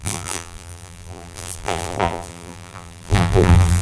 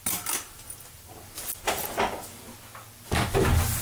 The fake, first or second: first